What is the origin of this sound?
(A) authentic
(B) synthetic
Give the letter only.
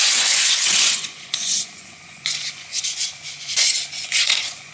B